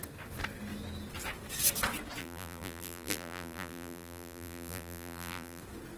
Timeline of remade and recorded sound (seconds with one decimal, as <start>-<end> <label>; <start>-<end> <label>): 0.0-2.2 recorded; 2.2-5.6 remade; 5.6-6.0 recorded